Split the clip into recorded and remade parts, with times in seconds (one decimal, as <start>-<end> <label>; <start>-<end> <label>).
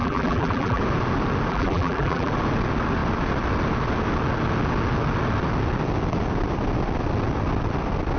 0.0-0.8 remade; 0.8-1.5 recorded; 1.5-2.3 remade; 2.3-8.2 recorded